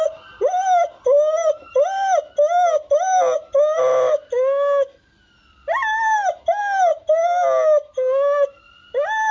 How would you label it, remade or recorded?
recorded